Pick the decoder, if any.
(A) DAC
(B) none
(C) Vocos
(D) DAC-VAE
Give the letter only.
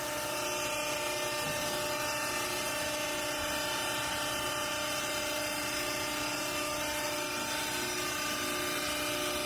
B